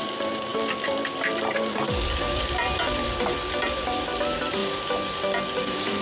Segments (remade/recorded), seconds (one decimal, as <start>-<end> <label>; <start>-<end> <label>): 0.0-4.6 remade; 4.6-5.6 recorded; 5.6-6.0 remade